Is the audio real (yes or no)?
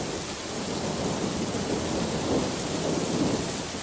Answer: yes